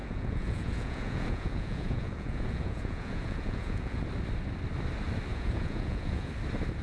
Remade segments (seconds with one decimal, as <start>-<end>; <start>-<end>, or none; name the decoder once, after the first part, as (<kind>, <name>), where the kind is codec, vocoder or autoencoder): 0.0-4.0 (vocoder, Vocos); 5.3-6.3